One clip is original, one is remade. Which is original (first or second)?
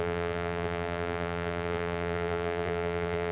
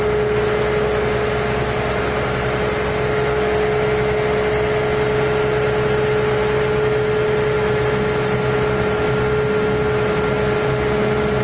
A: second